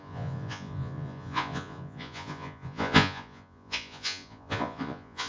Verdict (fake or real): fake